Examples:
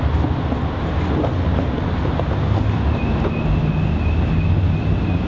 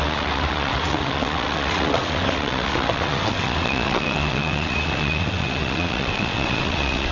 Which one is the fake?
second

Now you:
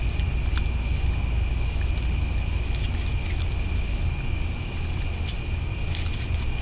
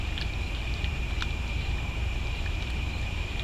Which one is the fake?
second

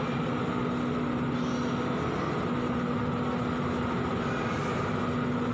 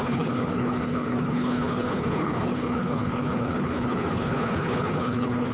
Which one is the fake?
second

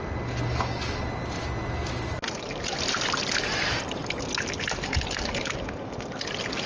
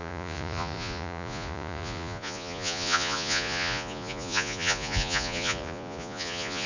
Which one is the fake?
second